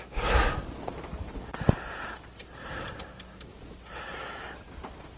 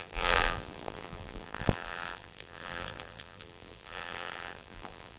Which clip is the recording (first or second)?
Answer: first